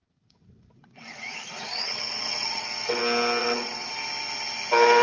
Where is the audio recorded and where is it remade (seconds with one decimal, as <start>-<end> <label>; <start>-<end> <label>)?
0.0-3.0 remade; 3.0-3.4 recorded; 3.4-3.9 remade; 3.9-5.0 recorded